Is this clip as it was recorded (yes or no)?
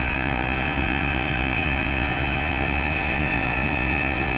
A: no